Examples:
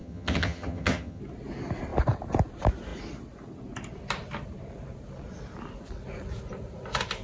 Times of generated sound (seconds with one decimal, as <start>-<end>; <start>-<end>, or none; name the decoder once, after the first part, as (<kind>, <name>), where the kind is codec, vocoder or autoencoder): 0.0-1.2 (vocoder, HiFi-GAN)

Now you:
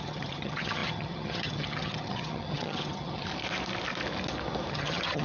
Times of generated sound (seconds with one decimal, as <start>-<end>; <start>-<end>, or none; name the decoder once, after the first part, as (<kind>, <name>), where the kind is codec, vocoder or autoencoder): 0.0-3.3 (vocoder, HiFi-GAN); 4.7-5.2

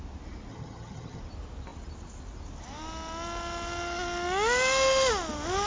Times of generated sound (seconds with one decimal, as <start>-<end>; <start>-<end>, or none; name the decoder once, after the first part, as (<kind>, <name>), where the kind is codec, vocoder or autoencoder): 0.5-1.2 (vocoder, HiFi-GAN)